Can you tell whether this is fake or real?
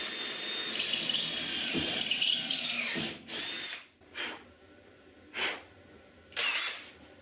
real